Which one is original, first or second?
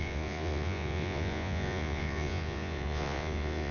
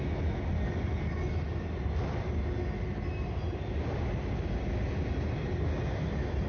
second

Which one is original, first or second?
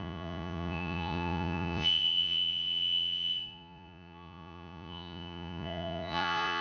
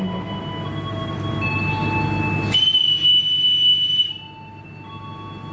second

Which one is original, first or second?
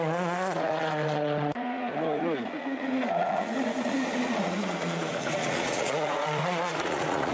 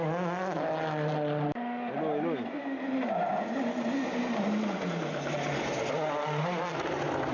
second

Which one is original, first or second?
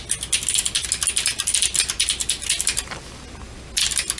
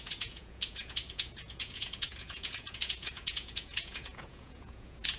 first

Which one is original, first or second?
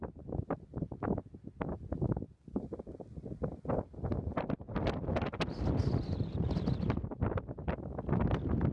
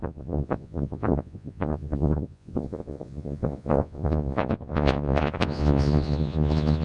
first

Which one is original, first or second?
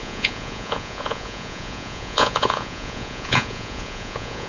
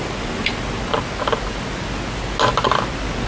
second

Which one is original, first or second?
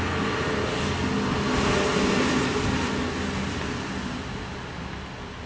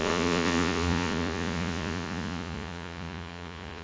first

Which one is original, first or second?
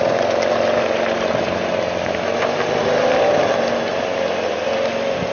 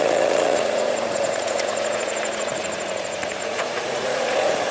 first